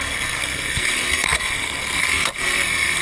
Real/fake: fake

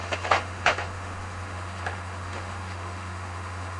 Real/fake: fake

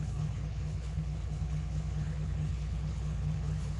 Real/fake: fake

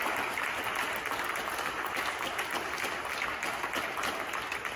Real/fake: real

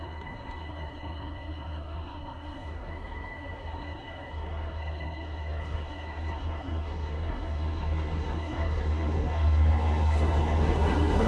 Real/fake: fake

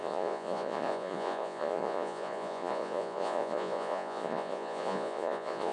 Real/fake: fake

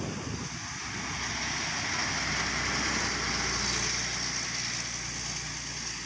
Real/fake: real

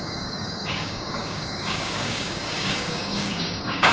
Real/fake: fake